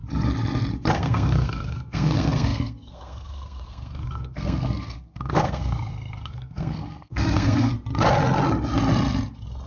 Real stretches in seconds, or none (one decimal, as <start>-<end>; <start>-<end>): 0.0-0.9; 7.7-9.7